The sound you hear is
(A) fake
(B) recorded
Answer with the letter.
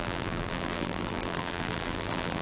A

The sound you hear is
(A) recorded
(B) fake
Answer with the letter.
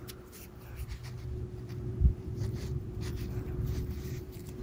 B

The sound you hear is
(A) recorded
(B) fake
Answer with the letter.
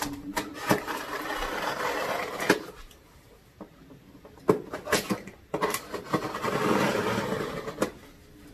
A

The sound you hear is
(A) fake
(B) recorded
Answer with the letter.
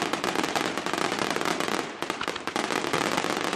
B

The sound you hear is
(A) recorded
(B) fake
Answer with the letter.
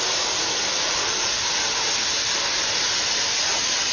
A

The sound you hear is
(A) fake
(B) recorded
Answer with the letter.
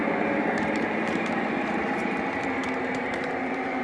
A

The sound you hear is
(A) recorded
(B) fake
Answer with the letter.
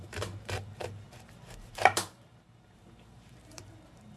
B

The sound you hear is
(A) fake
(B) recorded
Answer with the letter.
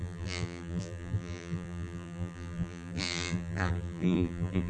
A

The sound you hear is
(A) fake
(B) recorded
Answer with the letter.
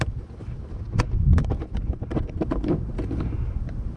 A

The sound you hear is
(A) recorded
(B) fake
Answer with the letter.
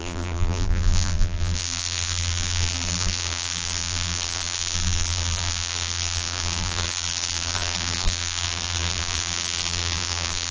B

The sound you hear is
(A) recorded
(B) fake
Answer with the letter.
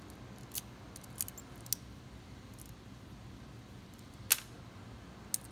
A